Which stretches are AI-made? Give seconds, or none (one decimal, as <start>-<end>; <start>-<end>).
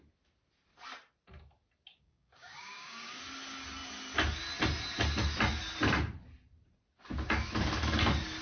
1.9-3.2